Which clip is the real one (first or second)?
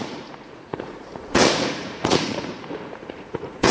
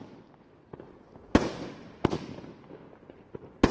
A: second